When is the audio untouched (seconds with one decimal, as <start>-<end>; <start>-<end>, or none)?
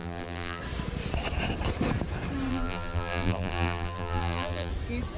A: 0.6-2.5; 4.7-5.2